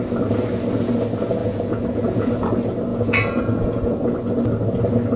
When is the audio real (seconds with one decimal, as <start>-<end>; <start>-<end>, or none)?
0.0-1.4; 2.5-2.9; 3.9-5.2